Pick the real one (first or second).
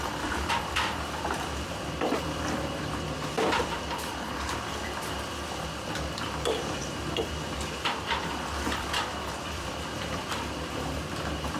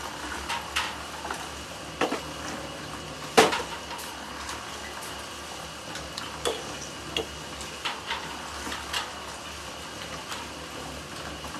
second